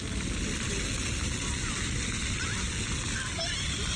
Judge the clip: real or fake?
real